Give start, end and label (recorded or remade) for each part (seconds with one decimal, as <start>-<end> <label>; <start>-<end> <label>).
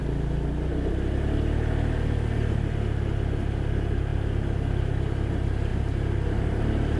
0.0-0.7 recorded; 0.7-2.7 remade; 2.7-4.1 recorded; 4.1-4.8 remade; 4.8-7.0 recorded